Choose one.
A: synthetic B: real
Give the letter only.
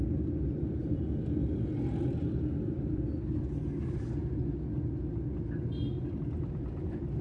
B